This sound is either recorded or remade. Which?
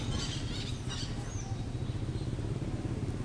recorded